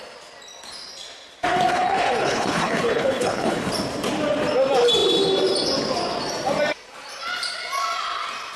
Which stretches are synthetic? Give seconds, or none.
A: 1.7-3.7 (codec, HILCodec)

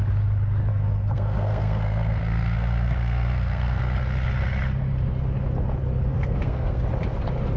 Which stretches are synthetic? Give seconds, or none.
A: 0.7-3.8 (codec, SNAC); 6.1-6.8

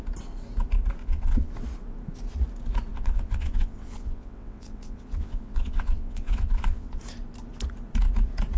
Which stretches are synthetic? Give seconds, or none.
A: 1.0-1.5 (vocoder, WaveNeXt); 2.9-7.0

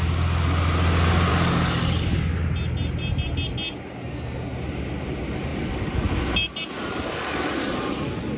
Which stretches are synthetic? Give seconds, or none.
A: 1.3-2.4 (codec, DAC)

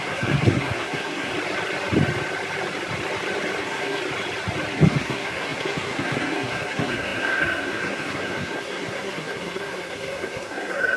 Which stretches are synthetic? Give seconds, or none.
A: 0.0-1.3 (codec, SNAC); 3.6-4.0; 4.7-11.0

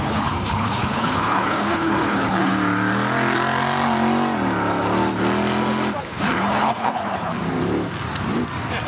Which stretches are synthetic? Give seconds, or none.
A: 0.0-2.5 (codec, HILCodec); 6.0-7.4

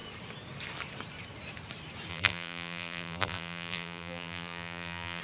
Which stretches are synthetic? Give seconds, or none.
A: 2.1-5.2 (vocoder, BigVGAN v2)

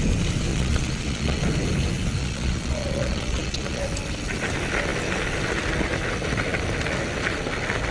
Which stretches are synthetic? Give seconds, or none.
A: 0.5-1.4 (vocoder, Vocos); 2.2-3.8